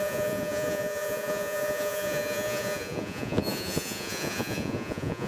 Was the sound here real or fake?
fake